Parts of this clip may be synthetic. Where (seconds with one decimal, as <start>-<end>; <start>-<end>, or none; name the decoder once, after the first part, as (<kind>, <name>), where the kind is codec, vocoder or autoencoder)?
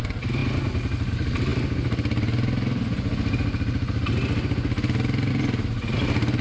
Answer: none